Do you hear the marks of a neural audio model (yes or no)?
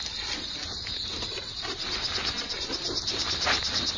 no